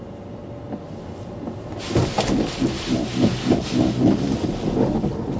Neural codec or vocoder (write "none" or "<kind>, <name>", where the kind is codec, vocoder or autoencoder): none